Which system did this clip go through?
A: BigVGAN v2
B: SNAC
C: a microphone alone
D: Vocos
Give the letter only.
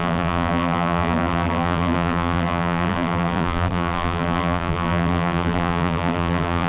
A